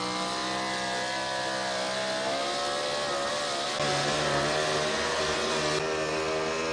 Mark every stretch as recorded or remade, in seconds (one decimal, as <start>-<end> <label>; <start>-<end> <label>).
0.0-6.7 recorded